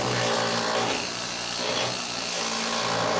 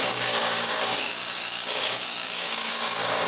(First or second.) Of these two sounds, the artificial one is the second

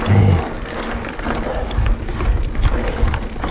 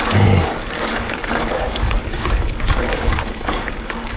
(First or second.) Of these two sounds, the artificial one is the second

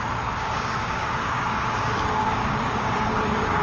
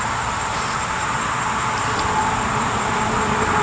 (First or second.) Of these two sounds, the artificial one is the first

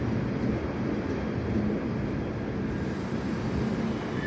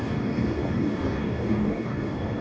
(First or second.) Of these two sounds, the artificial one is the second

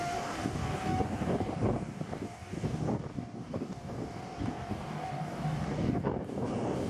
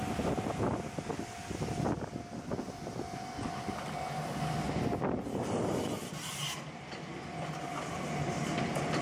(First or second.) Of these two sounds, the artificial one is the first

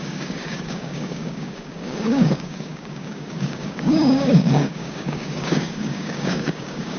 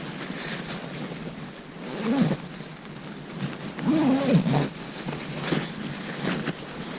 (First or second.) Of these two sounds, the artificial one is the first